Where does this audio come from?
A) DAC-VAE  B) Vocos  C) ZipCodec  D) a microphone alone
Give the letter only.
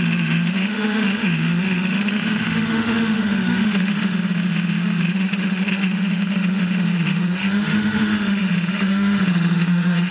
A